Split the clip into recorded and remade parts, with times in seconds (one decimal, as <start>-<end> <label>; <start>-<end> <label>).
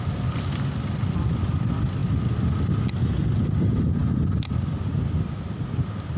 0.0-6.2 recorded